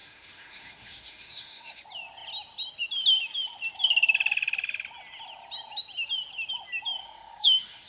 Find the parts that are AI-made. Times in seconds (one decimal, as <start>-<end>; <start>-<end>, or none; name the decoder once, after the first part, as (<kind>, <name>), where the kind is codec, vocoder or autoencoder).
0.0-1.8 (autoencoder, DAC-VAE); 7.0-7.9